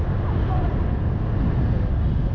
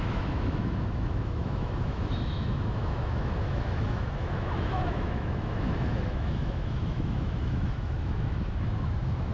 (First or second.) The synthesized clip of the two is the second